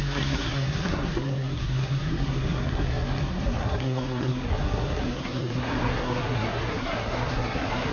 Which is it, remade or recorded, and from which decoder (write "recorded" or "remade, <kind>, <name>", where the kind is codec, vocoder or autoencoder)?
remade, codec, SNAC